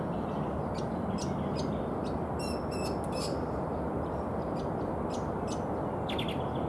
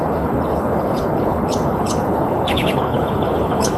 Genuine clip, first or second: first